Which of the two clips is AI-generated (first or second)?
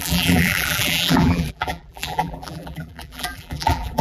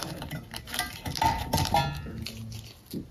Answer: first